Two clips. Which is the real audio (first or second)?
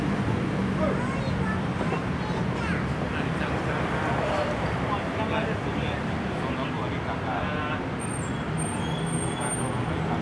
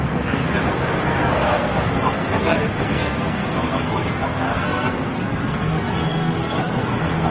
first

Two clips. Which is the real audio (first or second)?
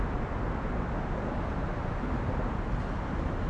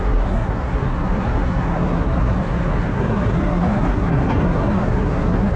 first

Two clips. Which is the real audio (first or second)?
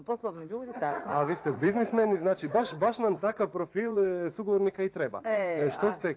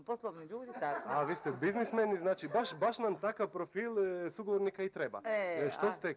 second